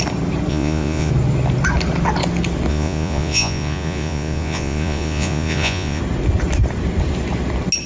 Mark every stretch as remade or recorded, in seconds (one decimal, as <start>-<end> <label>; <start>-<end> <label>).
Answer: 0.0-0.5 recorded; 0.5-1.1 remade; 1.1-2.7 recorded; 2.7-6.0 remade; 6.0-7.9 recorded

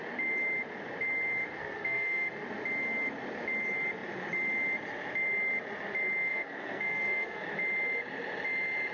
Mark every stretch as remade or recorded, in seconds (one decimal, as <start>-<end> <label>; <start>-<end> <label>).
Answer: 0.0-1.6 recorded; 1.6-2.3 remade; 2.3-6.3 recorded; 6.3-7.4 remade; 7.4-8.9 recorded

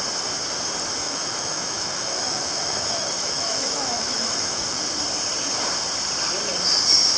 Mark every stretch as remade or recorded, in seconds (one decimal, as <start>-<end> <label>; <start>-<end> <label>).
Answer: 0.0-1.0 recorded; 1.0-4.8 remade; 4.8-7.2 recorded